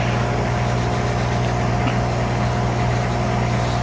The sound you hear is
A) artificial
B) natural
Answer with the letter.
B